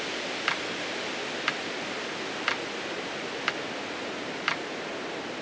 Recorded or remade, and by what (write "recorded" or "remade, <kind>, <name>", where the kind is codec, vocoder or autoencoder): recorded